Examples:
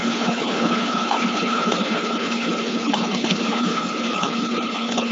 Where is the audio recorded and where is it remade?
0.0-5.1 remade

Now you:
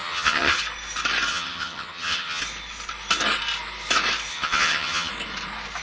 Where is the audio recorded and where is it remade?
0.0-0.6 remade; 0.6-1.3 recorded; 1.3-2.4 remade; 2.4-4.3 recorded; 4.3-5.1 remade; 5.1-5.8 recorded

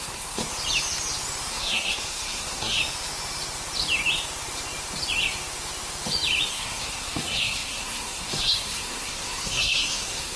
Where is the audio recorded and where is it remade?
0.0-0.4 remade; 0.4-1.5 recorded; 1.5-2.8 remade; 2.8-6.5 recorded; 6.5-10.4 remade

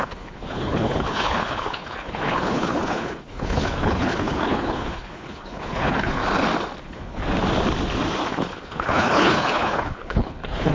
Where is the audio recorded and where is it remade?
0.0-6.2 remade; 6.2-6.8 recorded; 6.8-7.2 remade; 7.2-8.3 recorded; 8.3-10.7 remade

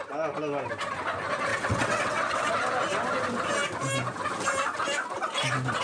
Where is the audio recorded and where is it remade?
0.0-1.5 recorded; 1.5-2.5 remade; 2.5-5.8 recorded

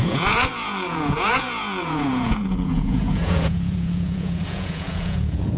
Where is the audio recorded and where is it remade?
0.0-5.6 remade

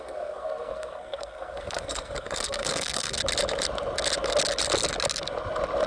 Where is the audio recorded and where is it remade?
0.0-3.2 remade; 3.2-5.9 recorded

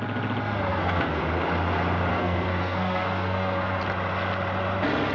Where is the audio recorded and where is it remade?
0.0-0.7 recorded; 0.7-1.2 remade; 1.2-2.1 recorded; 2.1-3.8 remade; 3.8-5.1 recorded